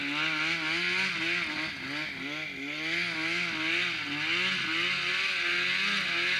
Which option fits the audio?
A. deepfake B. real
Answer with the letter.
B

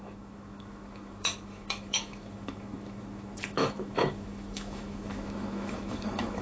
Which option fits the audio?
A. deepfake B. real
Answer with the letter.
A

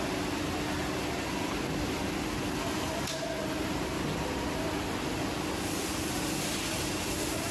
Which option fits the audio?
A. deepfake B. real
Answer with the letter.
B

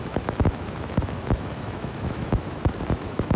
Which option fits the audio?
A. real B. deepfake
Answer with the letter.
B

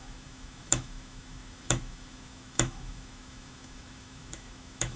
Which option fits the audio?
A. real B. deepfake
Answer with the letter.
B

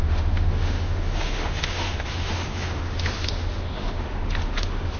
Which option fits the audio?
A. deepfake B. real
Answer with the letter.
A